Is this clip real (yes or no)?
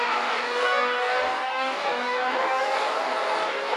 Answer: no